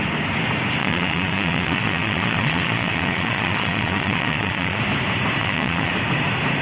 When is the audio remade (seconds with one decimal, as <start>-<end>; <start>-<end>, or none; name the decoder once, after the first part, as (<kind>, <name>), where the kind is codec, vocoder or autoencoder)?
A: 0.8-4.8 (vocoder, Vocos); 5.4-5.9